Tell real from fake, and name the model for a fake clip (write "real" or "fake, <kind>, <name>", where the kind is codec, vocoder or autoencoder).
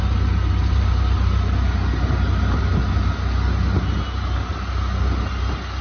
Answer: real